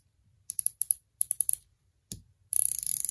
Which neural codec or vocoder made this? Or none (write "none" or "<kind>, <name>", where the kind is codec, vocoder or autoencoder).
vocoder, BigVGAN v2